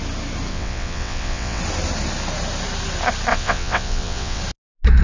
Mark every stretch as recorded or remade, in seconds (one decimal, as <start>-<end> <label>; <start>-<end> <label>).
0.0-0.5 recorded; 0.5-1.6 remade; 1.6-3.3 recorded; 3.3-4.4 remade; 4.4-5.0 recorded